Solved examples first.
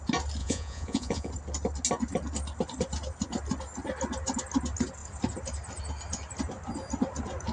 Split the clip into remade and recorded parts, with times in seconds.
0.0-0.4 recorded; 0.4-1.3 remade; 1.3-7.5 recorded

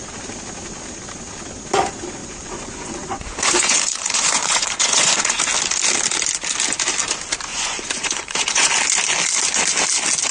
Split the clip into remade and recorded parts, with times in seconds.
0.0-2.2 recorded; 2.2-5.4 remade; 5.4-7.5 recorded; 7.5-8.7 remade; 8.7-10.3 recorded

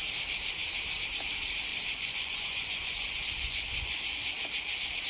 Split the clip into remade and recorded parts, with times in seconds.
0.0-1.7 recorded; 1.7-4.2 remade; 4.2-5.1 recorded

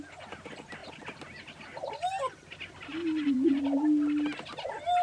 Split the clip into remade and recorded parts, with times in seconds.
0.0-3.0 recorded; 3.0-3.6 remade; 3.6-5.0 recorded

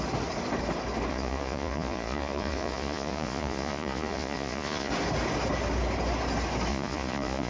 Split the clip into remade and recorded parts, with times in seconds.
0.0-1.1 recorded; 1.1-4.9 remade; 4.9-6.7 recorded; 6.7-7.5 remade